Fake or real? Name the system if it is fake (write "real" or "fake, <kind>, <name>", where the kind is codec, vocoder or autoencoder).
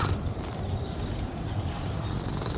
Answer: fake, vocoder, BigVGAN v2